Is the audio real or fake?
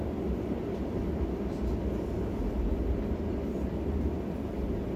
real